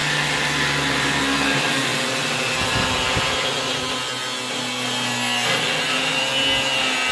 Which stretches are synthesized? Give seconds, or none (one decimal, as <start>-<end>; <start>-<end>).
none